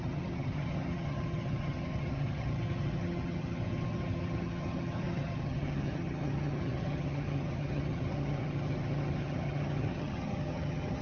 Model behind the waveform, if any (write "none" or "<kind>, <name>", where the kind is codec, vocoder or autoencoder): vocoder, HiFi-GAN